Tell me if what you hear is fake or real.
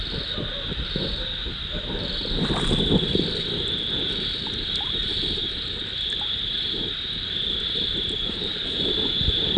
real